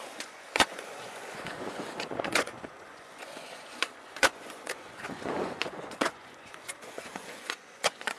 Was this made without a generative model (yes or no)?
no